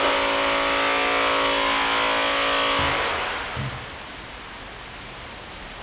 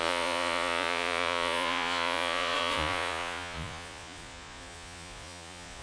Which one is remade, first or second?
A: second